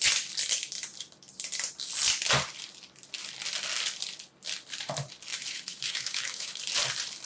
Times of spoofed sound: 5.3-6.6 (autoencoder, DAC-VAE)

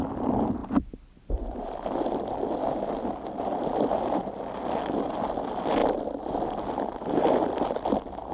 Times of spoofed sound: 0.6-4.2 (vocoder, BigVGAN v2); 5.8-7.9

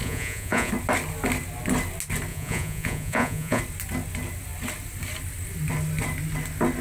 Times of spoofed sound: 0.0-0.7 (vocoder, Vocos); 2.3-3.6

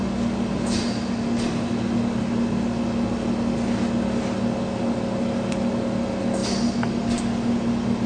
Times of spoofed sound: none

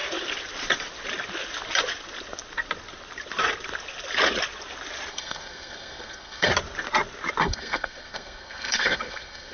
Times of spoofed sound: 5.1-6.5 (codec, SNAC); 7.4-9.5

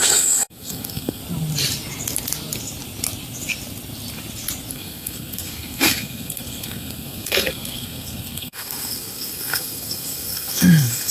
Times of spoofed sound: 0.0-1.2 (codec, SNAC); 4.7-11.1

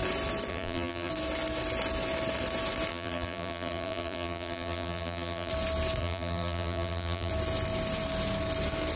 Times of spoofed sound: 0.5-1.1 (vocoder, BigVGAN v2); 2.9-5.5; 6.0-7.3

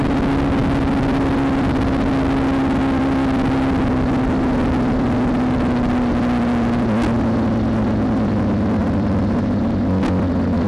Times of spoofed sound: 8.8-10.0 (vocoder, BigVGAN v2)